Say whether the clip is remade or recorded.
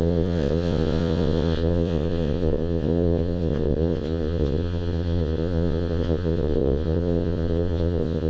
remade